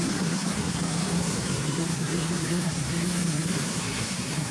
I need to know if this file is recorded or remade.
remade